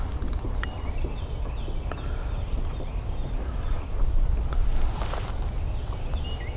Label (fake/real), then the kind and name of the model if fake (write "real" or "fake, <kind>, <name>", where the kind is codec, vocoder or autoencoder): real